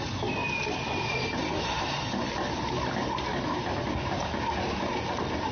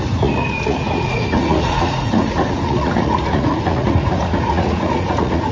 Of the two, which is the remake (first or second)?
second